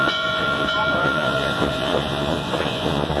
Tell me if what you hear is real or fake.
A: fake